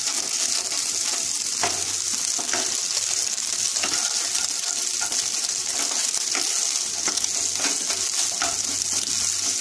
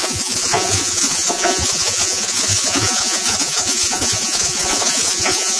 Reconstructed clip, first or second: second